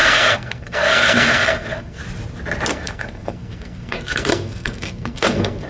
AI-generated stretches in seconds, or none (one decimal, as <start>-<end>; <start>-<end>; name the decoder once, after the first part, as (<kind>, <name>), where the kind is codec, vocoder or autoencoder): 0.0-2.0 (codec, SNAC); 2.7-5.7